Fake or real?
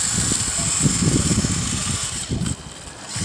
real